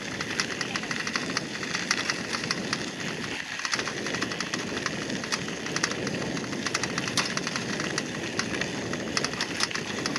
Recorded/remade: recorded